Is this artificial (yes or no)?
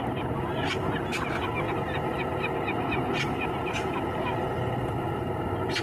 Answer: no